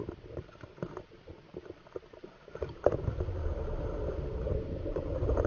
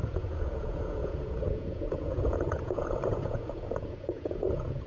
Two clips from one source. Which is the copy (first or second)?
second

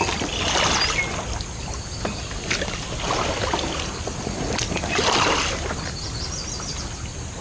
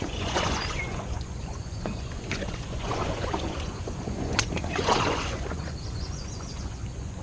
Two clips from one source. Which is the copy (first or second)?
second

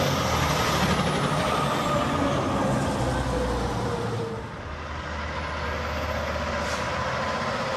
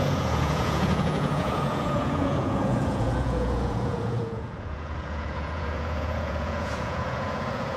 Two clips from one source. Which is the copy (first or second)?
second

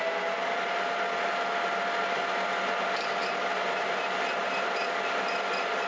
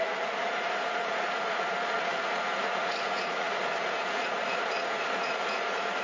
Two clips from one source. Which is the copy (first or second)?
second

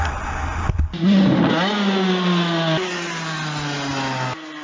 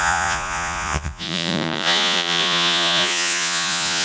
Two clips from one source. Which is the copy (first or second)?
second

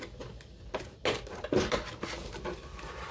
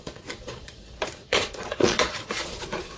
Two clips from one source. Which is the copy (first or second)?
second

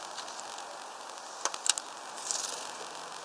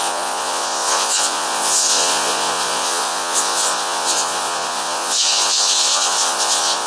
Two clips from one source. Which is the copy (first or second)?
second